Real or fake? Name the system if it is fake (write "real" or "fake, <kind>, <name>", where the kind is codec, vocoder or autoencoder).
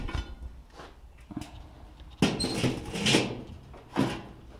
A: real